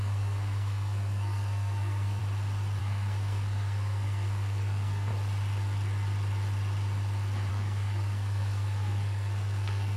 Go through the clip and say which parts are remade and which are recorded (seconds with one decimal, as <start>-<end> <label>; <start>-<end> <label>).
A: 0.0-2.2 remade; 2.2-2.8 recorded; 2.8-5.1 remade; 5.1-7.5 recorded; 7.5-10.0 remade